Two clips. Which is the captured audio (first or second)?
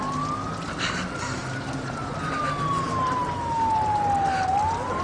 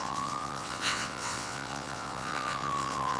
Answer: first